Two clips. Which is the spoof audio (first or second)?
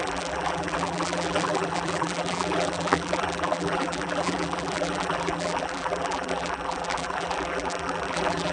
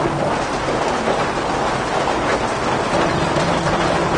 first